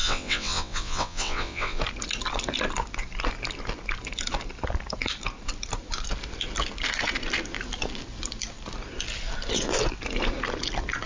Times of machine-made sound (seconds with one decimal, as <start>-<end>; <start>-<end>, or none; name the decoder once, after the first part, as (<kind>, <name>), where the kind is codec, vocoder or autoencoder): 0.0-1.8 (vocoder, WaveNeXt)

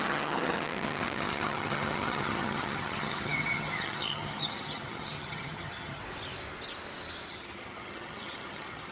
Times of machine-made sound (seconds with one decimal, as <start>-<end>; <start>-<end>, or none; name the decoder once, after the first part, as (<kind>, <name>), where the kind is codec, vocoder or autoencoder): 0.0-6.0 (vocoder, HiFi-GAN); 7.3-8.9

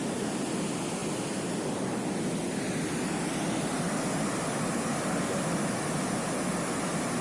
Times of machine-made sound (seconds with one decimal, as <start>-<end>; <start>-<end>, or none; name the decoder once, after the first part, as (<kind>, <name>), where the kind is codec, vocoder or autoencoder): none

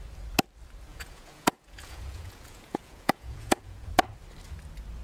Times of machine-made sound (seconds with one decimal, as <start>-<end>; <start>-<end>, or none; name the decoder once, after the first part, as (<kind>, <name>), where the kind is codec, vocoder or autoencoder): 0.9-3.9 (vocoder, Vocos)

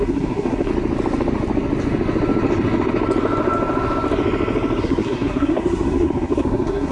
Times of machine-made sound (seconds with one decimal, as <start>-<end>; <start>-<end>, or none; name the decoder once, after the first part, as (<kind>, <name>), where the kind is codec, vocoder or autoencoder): 0.0-0.7 (codec, SNAC); 4.8-6.9

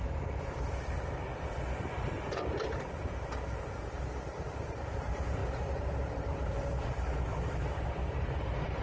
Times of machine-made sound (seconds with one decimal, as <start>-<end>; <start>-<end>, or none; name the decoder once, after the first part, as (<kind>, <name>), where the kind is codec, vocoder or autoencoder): 0.0-1.3 (vocoder, BigVGAN v2); 3.6-8.8

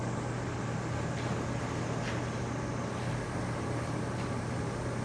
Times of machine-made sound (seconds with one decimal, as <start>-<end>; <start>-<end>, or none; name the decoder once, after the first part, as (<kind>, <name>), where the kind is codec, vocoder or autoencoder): none

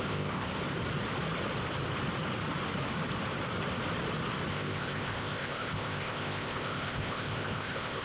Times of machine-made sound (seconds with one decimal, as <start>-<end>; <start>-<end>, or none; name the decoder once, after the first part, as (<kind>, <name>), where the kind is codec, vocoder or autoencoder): 0.0-0.5 (codec, ZipCodec); 4.5-8.0